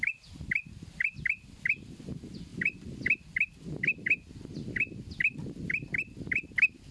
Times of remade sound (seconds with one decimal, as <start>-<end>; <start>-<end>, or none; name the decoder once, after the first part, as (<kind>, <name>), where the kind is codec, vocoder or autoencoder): none